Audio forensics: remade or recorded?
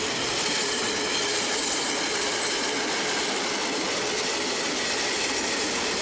recorded